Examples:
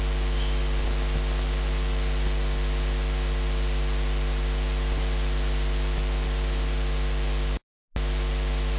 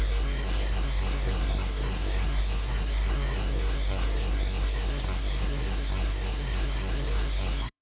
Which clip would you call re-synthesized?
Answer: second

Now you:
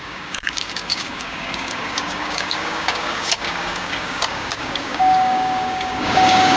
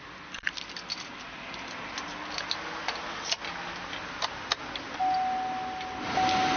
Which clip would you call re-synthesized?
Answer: first